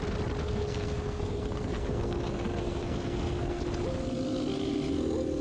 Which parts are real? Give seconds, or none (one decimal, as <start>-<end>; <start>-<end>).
0.0-0.4; 3.6-5.4